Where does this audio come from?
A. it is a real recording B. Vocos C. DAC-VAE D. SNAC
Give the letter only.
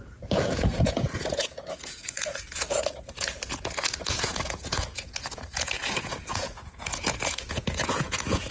B